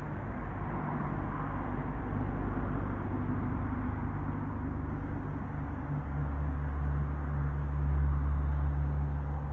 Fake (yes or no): no